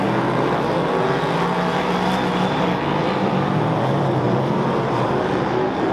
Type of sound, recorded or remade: recorded